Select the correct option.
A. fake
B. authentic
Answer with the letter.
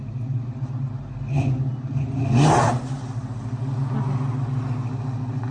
B